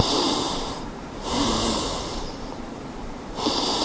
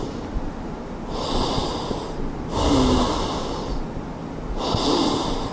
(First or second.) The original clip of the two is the second